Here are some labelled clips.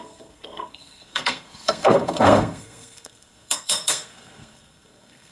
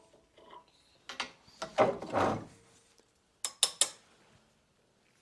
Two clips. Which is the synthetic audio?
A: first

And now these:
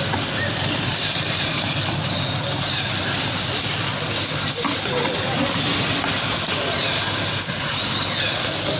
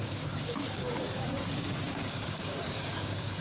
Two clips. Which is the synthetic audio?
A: second